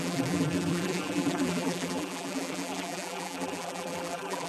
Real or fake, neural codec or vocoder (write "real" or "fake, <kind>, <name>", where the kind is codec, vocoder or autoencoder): fake, vocoder, BigVGAN v2